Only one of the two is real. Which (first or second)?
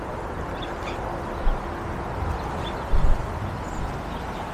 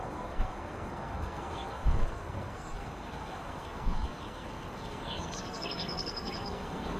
first